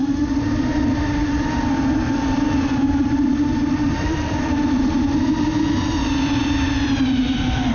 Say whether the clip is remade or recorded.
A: remade